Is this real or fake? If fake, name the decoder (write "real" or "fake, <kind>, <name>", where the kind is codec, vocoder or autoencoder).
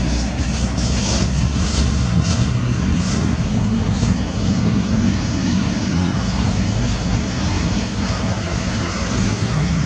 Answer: fake, codec, SNAC